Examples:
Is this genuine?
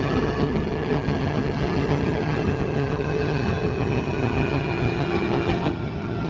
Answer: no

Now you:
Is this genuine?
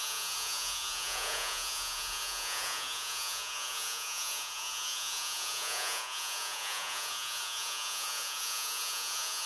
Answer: no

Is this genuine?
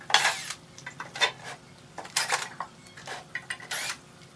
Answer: yes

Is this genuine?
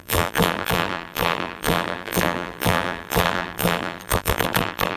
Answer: no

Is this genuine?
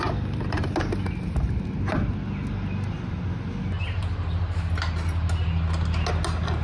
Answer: yes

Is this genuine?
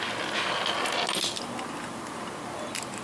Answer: yes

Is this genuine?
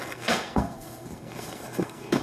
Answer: no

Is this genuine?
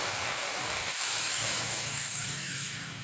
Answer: no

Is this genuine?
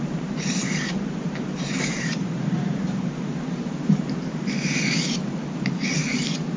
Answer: no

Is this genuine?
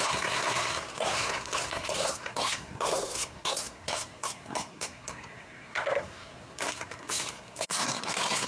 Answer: no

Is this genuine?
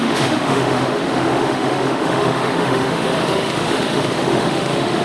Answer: no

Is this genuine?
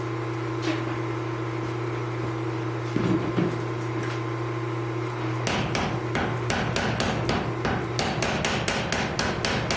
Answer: yes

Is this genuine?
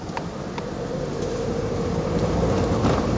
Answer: no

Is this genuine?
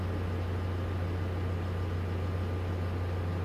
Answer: yes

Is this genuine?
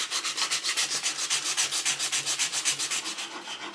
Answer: yes